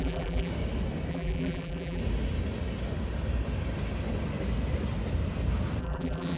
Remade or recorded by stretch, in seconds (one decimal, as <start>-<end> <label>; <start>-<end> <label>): 0.0-0.5 remade; 0.5-1.1 recorded; 1.1-2.0 remade; 2.0-5.8 recorded; 5.8-6.4 remade